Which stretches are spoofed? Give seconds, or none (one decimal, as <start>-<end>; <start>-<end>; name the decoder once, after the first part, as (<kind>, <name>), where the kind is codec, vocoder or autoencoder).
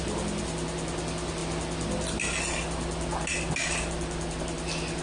none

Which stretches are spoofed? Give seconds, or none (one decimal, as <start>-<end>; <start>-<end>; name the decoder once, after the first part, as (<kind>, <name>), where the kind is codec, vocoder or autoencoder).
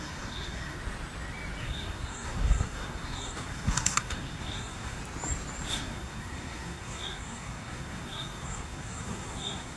0.0-0.8 (codec, SNAC); 1.6-5.0; 5.7-9.8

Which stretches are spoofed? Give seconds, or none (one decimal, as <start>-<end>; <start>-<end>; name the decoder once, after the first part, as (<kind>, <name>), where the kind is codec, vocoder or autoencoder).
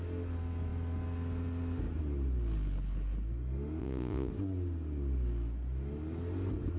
3.8-4.3 (vocoder, Vocos)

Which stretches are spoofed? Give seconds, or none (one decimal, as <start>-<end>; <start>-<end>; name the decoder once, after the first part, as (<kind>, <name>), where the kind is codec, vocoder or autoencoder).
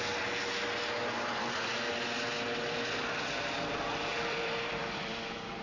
4.1-5.6 (vocoder, BigVGAN v2)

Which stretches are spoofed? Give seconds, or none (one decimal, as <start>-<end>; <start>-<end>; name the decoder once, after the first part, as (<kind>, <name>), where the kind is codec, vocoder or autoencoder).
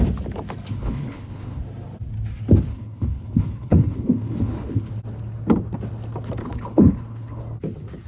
0.7-1.6 (codec, HILCodec); 2.7-4.9; 6.4-7.4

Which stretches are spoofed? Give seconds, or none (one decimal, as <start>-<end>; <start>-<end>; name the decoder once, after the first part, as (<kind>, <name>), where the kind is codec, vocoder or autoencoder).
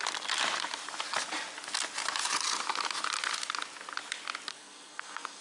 4.5-5.4 (codec, SNAC)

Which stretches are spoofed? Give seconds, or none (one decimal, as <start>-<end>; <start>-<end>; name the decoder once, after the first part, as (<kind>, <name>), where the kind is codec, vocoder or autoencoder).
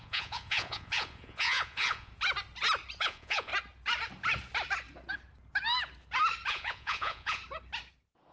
0.0-2.1 (vocoder, Vocos); 3.0-3.5; 6.5-7.4